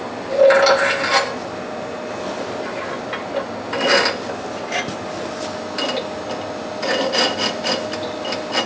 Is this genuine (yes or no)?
yes